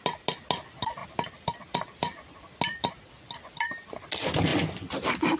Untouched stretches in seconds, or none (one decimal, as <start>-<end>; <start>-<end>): 0.0-5.4